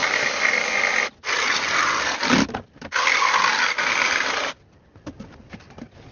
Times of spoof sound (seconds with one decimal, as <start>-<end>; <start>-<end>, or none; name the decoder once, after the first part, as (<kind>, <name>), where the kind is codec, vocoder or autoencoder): 0.0-0.7 (vocoder, BigVGAN v2); 2.2-3.5